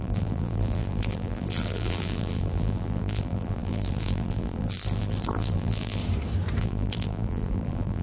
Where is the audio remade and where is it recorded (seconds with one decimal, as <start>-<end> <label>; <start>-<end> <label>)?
0.0-6.0 remade; 6.0-6.6 recorded; 6.6-8.0 remade